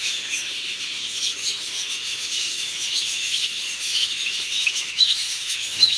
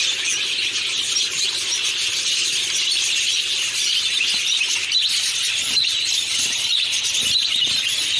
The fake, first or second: first